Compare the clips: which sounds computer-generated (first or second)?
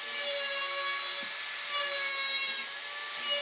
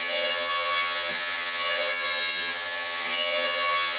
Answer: second